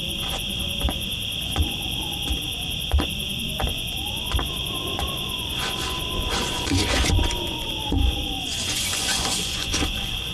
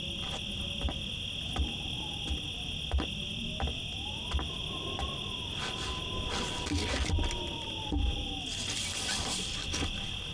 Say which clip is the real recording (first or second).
second